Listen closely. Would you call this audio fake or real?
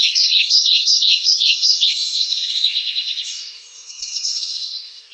fake